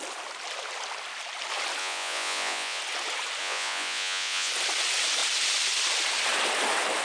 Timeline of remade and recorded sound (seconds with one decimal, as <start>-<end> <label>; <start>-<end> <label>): 0.0-1.8 recorded; 1.8-2.8 remade; 2.8-3.4 recorded; 3.4-4.5 remade; 4.5-7.0 recorded